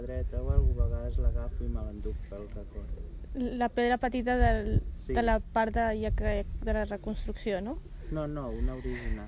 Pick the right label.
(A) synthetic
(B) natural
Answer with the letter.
B